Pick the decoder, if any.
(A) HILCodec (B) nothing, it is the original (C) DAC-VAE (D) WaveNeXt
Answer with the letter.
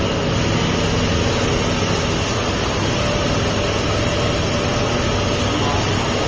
B